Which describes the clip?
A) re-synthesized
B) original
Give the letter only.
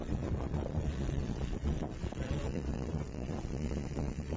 A